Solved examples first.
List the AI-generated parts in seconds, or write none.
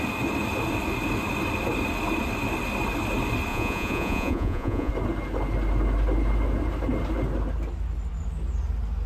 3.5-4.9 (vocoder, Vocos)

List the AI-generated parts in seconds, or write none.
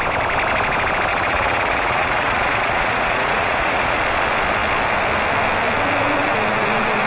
1.1-4.0 (vocoder, Vocos)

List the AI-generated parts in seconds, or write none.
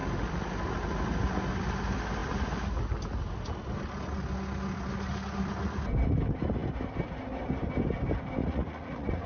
8.4-9.3 (vocoder, Vocos)